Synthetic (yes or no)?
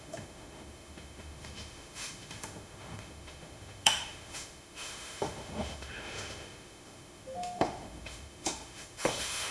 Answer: yes